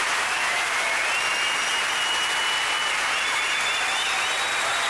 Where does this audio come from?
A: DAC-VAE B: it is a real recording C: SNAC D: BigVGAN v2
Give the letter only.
B